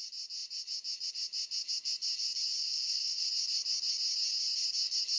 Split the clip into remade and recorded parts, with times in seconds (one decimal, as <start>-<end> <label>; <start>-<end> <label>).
0.0-2.6 recorded; 2.6-3.3 remade; 3.3-5.2 recorded